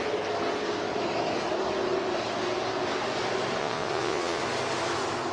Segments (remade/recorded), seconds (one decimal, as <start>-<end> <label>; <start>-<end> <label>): 0.0-3.6 recorded; 3.6-4.4 remade; 4.4-5.3 recorded